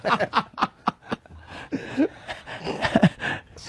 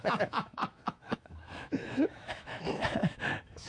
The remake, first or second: second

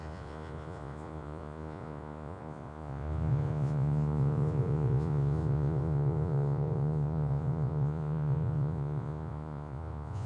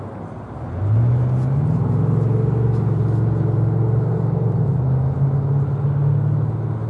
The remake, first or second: first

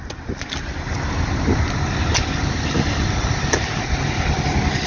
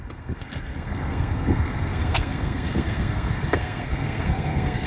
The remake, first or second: second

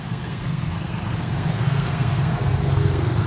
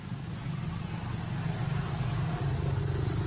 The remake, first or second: first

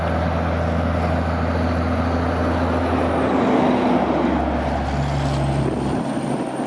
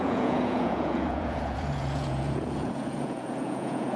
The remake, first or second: second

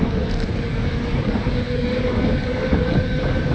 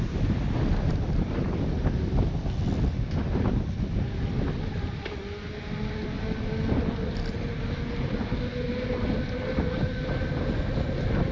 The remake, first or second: first